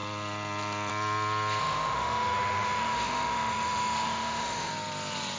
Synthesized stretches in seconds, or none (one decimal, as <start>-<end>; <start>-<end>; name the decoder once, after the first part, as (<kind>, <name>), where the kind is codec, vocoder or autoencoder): 1.6-4.7 (autoencoder, DAC-VAE)